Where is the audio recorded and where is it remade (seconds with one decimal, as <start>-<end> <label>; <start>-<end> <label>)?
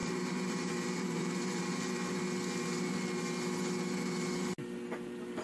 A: 0.0-2.2 remade; 2.2-5.4 recorded